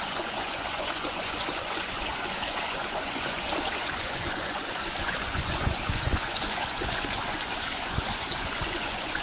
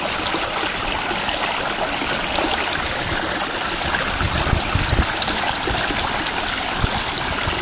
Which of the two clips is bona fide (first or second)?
second